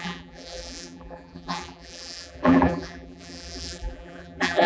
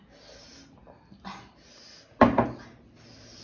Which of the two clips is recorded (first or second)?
second